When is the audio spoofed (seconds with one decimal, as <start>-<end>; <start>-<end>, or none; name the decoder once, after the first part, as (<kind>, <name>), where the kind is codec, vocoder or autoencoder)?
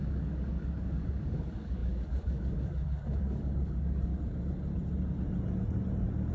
0.0-4.1 (codec, DAC)